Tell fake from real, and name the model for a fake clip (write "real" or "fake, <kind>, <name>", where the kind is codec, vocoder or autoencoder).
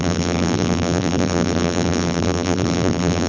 fake, vocoder, BigVGAN v2